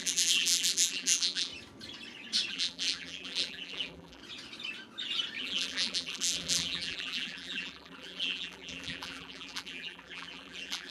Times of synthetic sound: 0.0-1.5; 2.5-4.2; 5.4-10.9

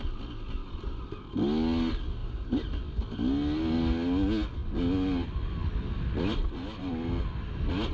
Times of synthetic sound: 0.6-1.3; 2.2-2.8

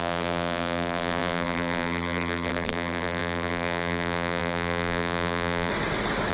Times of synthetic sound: 0.0-5.7

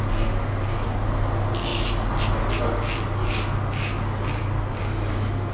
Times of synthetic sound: none

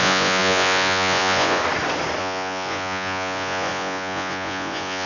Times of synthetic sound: 0.0-1.6; 2.2-5.1

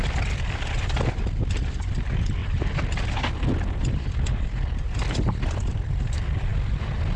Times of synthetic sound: 2.4-3.4

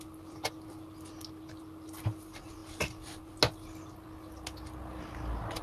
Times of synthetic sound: none

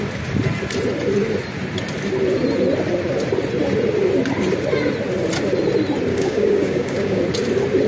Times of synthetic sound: 6.1-7.2